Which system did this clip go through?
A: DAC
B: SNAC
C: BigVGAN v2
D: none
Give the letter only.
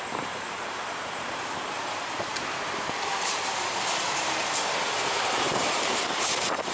C